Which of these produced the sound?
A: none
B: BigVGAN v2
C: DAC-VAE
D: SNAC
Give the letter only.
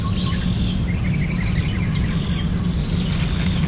A